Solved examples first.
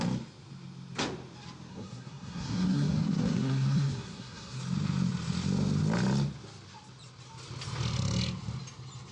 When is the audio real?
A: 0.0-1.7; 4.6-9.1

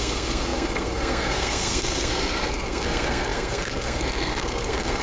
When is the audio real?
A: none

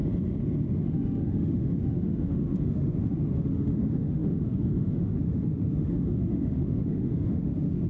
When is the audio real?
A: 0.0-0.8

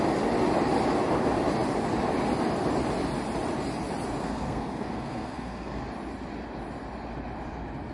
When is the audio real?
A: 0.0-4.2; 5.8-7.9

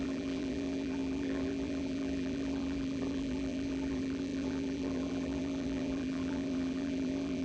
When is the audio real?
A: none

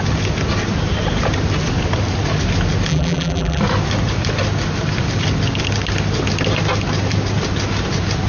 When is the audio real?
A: 0.0-2.9; 3.6-8.3

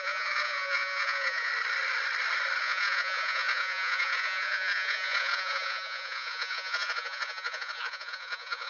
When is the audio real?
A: 1.5-2.6